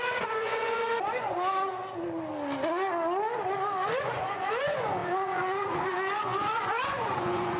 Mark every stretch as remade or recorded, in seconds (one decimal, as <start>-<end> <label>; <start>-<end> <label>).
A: 0.0-1.8 remade; 1.8-4.0 recorded; 4.0-7.6 remade